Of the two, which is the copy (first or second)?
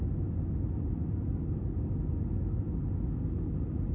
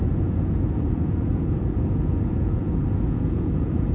second